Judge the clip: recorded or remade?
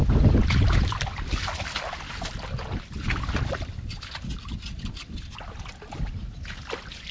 recorded